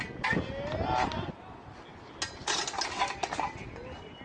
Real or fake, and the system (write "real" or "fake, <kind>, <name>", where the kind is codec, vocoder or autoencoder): real